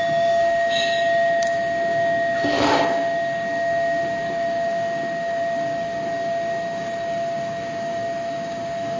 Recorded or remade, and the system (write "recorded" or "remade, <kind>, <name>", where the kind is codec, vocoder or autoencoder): remade, codec, DAC